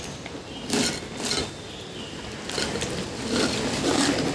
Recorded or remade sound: recorded